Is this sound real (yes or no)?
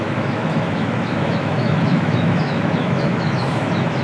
no